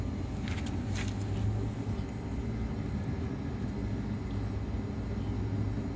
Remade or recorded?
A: recorded